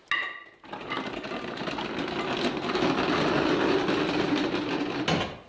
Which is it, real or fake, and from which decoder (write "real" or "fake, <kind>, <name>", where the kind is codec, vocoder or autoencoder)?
real